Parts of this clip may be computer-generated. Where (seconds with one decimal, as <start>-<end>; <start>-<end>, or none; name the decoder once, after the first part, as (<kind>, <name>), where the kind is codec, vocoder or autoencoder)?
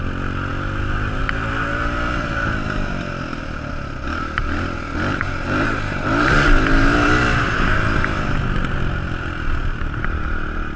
1.7-3.7 (vocoder, BigVGAN v2); 5.1-7.2